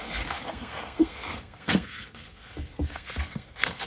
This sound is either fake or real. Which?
fake